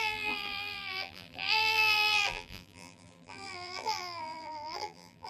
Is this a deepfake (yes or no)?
yes